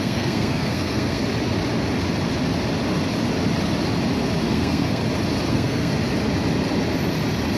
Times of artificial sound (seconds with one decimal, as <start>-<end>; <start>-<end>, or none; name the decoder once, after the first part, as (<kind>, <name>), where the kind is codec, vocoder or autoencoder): 0.0-1.2 (codec, SNAC); 4.5-5.0; 5.5-5.9